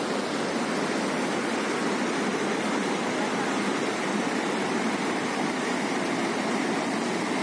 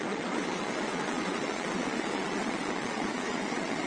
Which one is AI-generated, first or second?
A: second